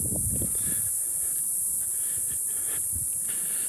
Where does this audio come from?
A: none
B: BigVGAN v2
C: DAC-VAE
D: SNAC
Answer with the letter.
A